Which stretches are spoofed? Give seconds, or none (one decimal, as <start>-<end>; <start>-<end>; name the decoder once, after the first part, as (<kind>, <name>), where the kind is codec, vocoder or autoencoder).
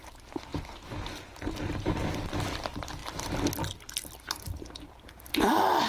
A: 0.0-0.5 (vocoder, BigVGAN v2); 1.5-3.0; 3.9-5.9